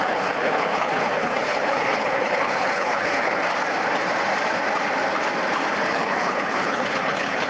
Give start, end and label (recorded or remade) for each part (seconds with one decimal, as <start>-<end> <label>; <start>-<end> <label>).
0.0-3.4 remade; 3.4-5.9 recorded; 5.9-7.5 remade

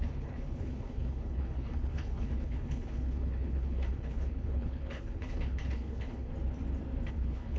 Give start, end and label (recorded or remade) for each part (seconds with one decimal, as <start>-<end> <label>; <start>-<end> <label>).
0.0-6.3 remade; 6.3-7.1 recorded; 7.1-7.6 remade

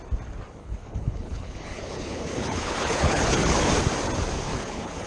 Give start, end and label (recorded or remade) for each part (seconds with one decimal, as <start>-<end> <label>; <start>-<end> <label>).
0.0-0.6 recorded; 0.6-3.7 remade; 3.7-4.5 recorded; 4.5-5.1 remade

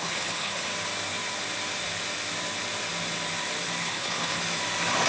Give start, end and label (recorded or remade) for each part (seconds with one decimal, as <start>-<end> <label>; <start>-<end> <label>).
0.0-0.7 remade; 0.7-3.8 recorded; 3.8-4.4 remade; 4.4-5.1 recorded

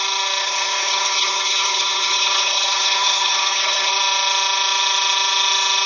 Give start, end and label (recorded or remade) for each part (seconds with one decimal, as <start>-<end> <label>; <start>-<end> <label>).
0.0-0.4 recorded; 0.4-3.9 remade; 3.9-5.9 recorded